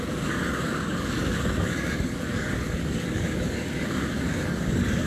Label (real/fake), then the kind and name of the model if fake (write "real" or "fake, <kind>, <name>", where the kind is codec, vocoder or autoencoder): fake, codec, DAC